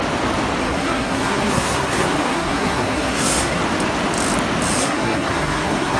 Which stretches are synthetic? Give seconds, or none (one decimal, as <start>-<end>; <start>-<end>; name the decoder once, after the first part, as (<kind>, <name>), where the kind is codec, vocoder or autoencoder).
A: 0.6-3.6 (codec, SNAC); 4.8-6.0